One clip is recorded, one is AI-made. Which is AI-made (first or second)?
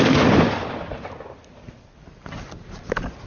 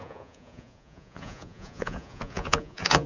second